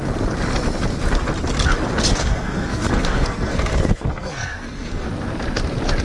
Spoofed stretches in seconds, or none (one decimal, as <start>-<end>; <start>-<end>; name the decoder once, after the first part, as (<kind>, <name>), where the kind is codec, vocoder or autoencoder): 2.1-5.1 (codec, SNAC)